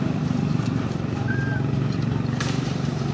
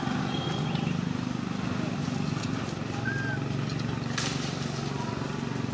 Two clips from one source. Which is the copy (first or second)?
first